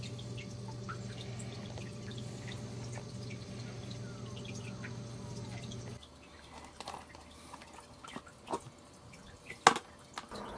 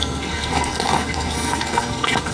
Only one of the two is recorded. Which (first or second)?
first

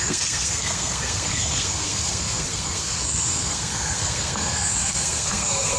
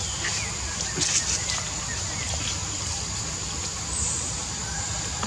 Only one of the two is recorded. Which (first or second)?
second